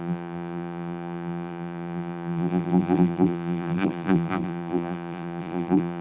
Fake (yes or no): yes